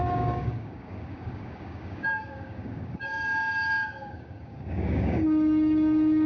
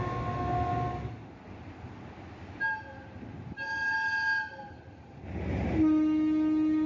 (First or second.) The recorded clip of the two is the second